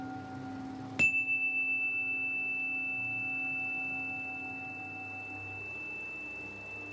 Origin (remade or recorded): recorded